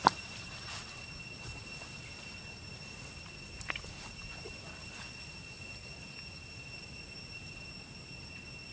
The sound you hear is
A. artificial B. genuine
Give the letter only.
B